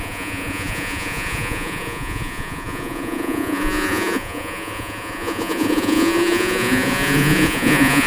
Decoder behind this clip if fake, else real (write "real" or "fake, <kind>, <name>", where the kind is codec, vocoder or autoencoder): fake, vocoder, Vocos